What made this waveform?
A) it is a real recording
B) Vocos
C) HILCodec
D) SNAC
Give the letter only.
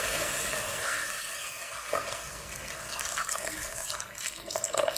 D